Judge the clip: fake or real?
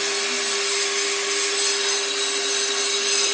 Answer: real